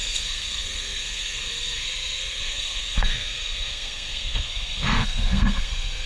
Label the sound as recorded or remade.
remade